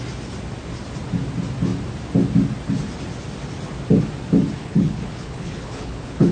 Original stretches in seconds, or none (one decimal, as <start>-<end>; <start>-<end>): 0.0-4.6